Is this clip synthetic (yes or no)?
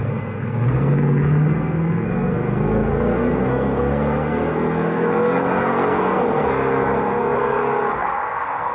yes